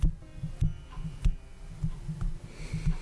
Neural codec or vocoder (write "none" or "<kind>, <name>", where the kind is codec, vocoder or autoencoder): none